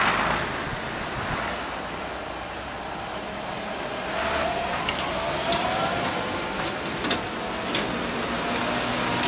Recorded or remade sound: recorded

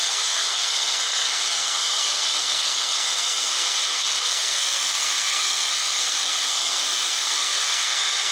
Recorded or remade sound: remade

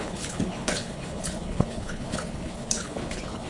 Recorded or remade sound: remade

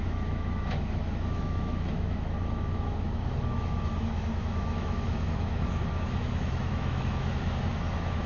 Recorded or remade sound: remade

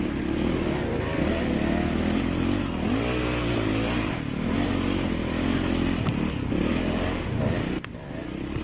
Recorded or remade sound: recorded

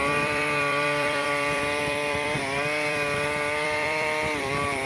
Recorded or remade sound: remade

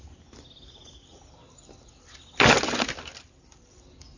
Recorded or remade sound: recorded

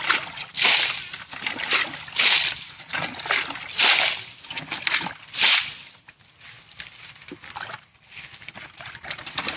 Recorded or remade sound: recorded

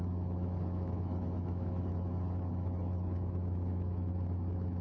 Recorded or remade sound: remade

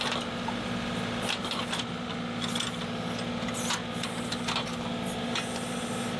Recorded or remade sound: recorded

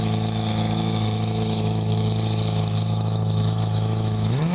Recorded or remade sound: remade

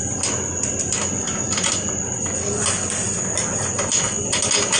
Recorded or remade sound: recorded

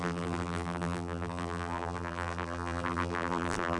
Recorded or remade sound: remade